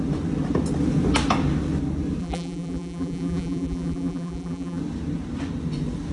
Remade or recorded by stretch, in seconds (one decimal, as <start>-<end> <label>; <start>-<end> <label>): 0.0-2.2 recorded; 2.2-4.8 remade; 4.8-6.1 recorded